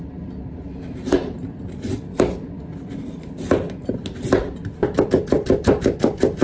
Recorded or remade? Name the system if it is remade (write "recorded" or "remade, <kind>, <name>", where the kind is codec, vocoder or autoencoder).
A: recorded